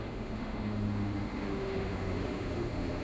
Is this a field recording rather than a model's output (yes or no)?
no